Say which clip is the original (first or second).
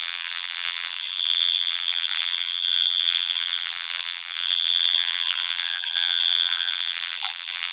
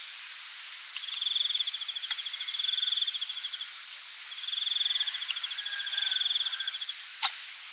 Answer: second